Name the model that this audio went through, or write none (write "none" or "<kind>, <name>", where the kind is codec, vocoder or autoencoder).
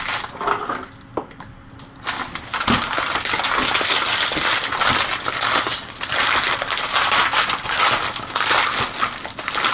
none